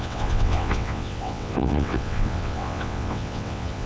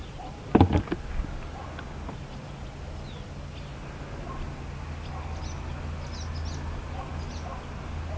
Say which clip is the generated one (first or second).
first